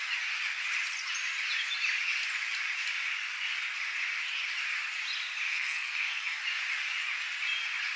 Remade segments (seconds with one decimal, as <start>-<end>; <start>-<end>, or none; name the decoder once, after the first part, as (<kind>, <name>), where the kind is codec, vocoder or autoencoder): 5.5-6.4 (codec, SNAC)